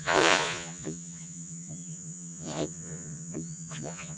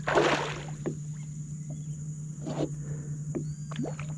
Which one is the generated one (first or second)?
first